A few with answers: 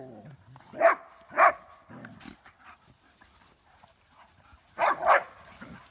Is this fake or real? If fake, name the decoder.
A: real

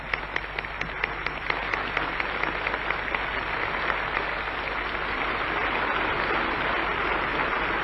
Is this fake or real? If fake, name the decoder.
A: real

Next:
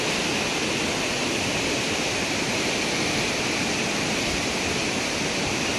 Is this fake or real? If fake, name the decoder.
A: real